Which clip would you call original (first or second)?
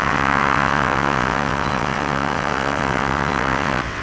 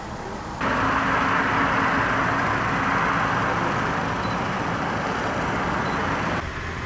second